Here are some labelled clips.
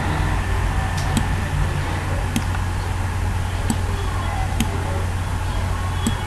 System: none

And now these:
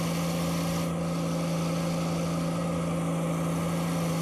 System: none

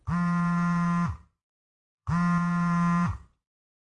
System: vocoder, BigVGAN v2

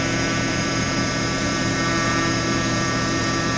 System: vocoder, BigVGAN v2